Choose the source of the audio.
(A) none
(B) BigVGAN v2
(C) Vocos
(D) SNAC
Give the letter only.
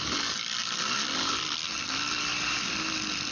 A